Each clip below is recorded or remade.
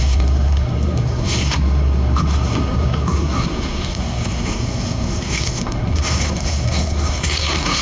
remade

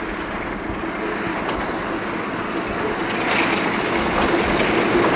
recorded